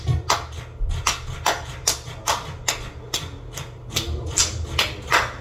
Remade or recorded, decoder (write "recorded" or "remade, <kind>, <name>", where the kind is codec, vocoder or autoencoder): recorded